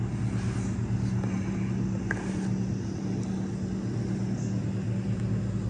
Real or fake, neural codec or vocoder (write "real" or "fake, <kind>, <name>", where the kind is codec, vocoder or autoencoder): real